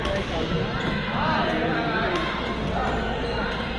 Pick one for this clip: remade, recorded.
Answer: recorded